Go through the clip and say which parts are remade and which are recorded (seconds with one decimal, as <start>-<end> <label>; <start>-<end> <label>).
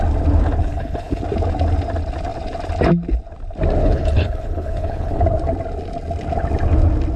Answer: 0.0-0.6 recorded; 0.6-1.2 remade; 1.2-3.8 recorded; 3.8-5.2 remade; 5.2-7.2 recorded